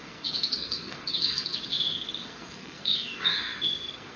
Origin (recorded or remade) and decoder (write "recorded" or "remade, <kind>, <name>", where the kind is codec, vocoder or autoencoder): remade, codec, SNAC